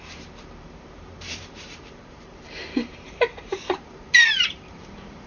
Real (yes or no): no